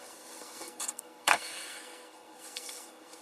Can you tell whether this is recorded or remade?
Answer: remade